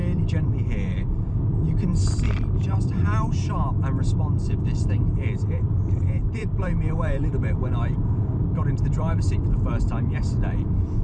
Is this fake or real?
fake